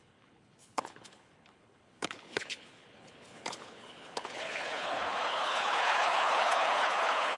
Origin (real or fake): fake